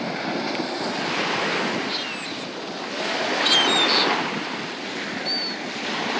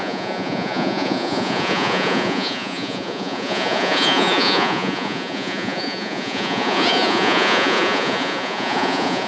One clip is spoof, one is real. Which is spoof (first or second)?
second